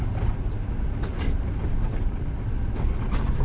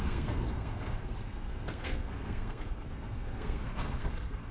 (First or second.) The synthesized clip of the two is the second